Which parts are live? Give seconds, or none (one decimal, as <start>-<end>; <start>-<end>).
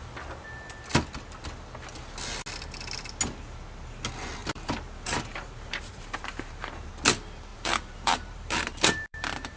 0.0-4.4; 6.9-7.5